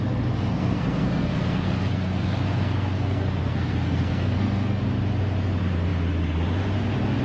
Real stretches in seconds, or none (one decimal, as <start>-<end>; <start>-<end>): 0.0-0.5; 4.8-7.2